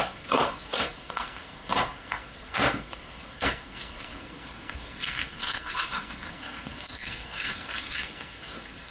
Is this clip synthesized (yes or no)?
yes